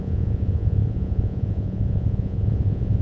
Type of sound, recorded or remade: remade